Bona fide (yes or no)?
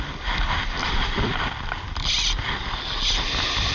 yes